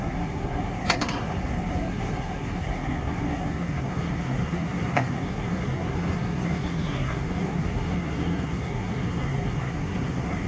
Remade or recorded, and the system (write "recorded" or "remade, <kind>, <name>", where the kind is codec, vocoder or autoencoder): remade, codec, SNAC